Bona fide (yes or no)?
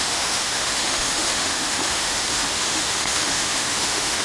no